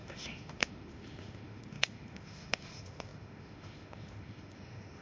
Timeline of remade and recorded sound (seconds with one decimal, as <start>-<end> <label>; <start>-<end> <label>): 0.0-5.0 remade

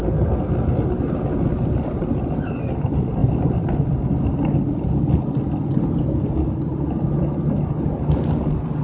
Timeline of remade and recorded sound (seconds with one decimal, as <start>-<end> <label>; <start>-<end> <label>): 0.0-8.8 recorded

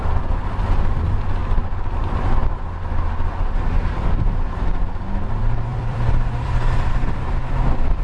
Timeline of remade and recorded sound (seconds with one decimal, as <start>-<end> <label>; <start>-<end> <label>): 0.0-5.7 recorded; 5.7-6.9 remade; 6.9-8.0 recorded

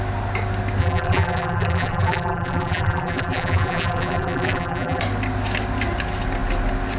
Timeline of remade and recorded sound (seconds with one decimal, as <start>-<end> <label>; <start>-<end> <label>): 0.0-0.8 recorded; 0.8-5.0 remade; 5.0-7.0 recorded

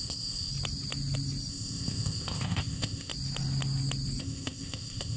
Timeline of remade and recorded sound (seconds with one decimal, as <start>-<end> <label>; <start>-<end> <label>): 0.0-0.5 remade; 0.5-1.5 recorded; 1.5-3.1 remade; 3.1-4.2 recorded; 4.2-5.2 remade